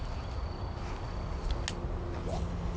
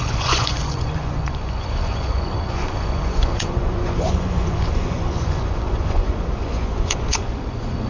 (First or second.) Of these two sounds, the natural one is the first